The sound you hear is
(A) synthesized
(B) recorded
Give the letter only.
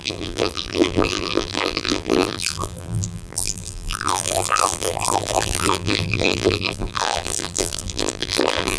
A